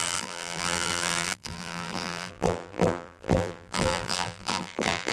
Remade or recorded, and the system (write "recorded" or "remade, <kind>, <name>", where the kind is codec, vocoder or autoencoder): remade, vocoder, BigVGAN v2